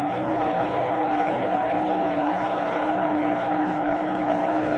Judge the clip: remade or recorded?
remade